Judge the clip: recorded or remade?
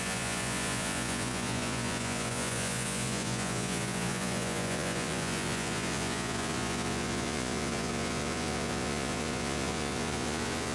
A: remade